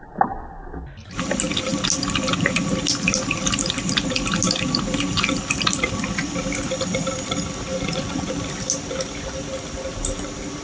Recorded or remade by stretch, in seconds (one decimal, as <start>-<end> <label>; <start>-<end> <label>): 0.0-7.7 recorded; 7.7-8.3 remade; 8.3-10.6 recorded